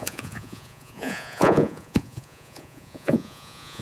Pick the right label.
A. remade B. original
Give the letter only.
A